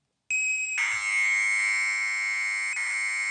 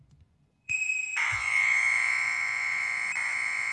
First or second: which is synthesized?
second